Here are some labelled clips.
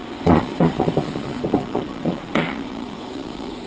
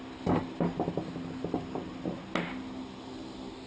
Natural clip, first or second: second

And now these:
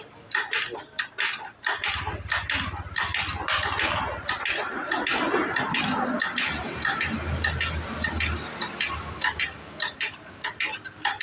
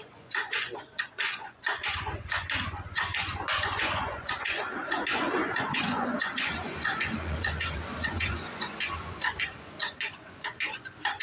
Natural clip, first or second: first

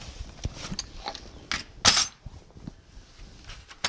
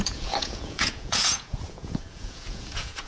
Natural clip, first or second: first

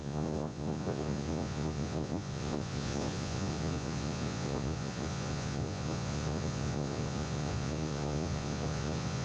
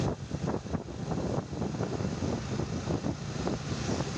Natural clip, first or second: second